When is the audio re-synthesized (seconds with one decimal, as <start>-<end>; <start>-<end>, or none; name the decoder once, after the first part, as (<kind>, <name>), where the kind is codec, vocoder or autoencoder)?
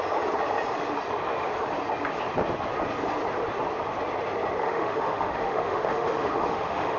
4.6-7.0 (autoencoder, DAC-VAE)